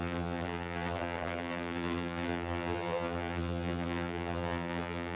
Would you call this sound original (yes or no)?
no